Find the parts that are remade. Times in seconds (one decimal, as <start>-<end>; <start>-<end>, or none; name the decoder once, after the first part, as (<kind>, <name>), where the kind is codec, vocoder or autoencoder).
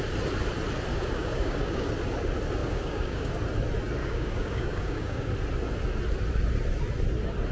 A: 0.9-1.9 (codec, DAC); 2.6-3.3; 4.0-5.3